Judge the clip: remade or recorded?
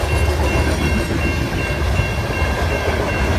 recorded